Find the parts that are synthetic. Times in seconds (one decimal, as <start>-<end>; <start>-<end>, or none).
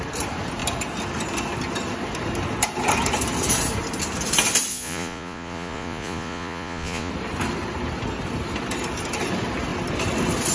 4.7-7.1